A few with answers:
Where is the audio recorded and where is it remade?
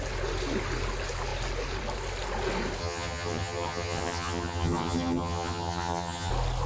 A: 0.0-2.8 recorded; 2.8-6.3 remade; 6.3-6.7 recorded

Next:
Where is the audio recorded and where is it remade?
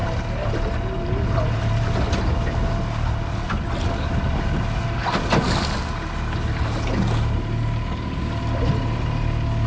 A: 0.0-9.7 recorded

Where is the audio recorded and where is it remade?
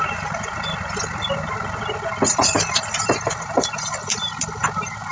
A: 0.0-5.1 recorded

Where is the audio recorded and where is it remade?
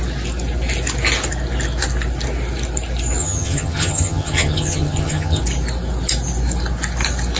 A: 0.0-3.2 recorded; 3.2-5.4 remade; 5.4-7.4 recorded